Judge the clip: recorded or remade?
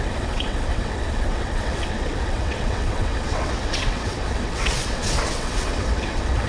remade